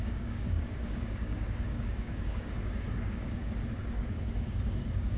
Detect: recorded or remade remade